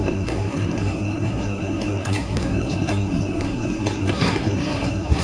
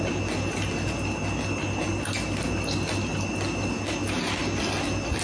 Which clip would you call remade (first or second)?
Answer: first